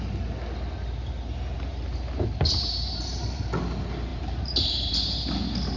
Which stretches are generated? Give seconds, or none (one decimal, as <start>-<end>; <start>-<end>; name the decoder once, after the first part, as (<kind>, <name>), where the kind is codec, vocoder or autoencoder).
1.7-3.4 (vocoder, BigVGAN v2); 4.1-4.9